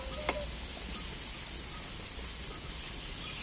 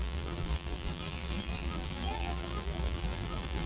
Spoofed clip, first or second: second